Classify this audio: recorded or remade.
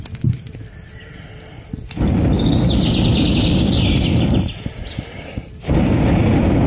recorded